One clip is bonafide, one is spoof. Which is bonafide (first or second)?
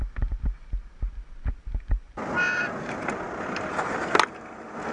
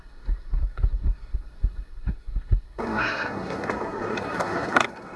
first